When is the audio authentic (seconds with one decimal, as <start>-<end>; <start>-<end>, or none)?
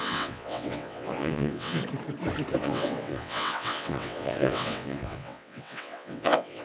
1.8-2.6